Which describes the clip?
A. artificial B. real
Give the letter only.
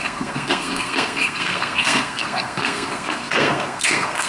A